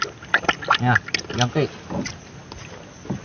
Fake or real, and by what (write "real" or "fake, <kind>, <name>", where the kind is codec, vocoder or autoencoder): real